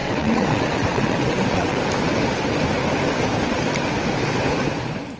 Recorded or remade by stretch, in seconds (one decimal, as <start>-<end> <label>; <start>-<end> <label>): 0.0-1.8 remade; 1.8-5.2 recorded